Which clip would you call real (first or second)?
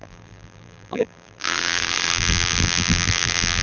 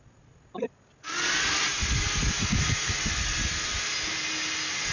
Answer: second